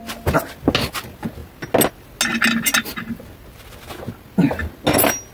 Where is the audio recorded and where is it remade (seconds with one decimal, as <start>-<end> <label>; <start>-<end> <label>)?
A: 0.0-5.3 recorded